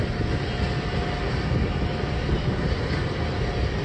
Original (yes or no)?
yes